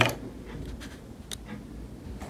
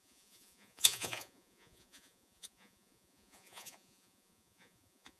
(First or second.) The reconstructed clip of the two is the second